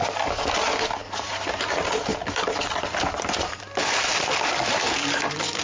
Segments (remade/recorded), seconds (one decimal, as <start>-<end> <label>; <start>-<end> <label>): 0.0-0.5 remade; 0.5-1.0 recorded; 1.0-1.7 remade; 1.7-2.1 recorded; 2.1-3.6 remade; 3.6-4.1 recorded; 4.1-5.6 remade